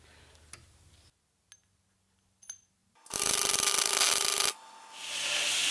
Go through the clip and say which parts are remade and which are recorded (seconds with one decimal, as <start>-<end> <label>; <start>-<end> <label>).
0.0-5.7 recorded